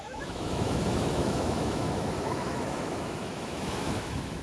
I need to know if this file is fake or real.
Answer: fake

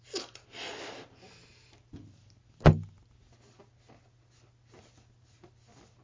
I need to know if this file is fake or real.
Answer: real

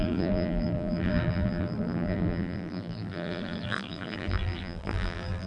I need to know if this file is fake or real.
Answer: fake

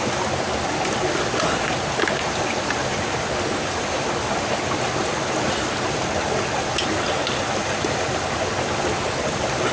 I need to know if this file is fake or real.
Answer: real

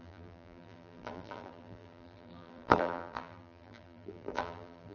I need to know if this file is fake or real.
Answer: fake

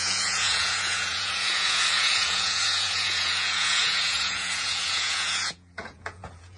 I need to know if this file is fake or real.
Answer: fake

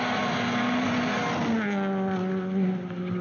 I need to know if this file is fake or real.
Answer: real